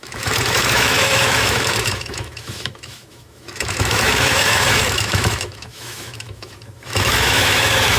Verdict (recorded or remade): remade